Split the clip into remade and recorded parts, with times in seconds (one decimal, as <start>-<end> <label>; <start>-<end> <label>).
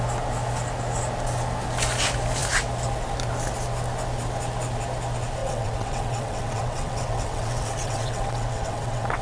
0.0-5.4 recorded; 5.4-9.2 remade